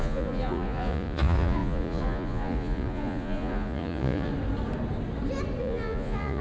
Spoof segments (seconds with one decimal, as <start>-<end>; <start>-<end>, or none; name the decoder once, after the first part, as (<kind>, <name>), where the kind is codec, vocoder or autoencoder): 0.0-4.3 (vocoder, Vocos); 5.6-6.4

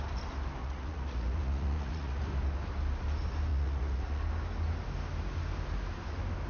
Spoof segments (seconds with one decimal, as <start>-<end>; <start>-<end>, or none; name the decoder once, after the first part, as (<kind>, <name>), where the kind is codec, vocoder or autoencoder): 0.6-2.2 (vocoder, Vocos); 3.5-4.2

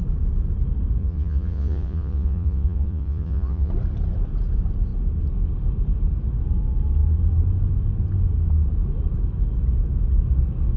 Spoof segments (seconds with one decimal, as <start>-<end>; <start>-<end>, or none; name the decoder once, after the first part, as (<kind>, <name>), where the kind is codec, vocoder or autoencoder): 1.0-3.7 (vocoder, Vocos)

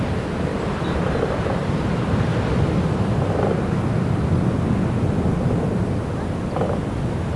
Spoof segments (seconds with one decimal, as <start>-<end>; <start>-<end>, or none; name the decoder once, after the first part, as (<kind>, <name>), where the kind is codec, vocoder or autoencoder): none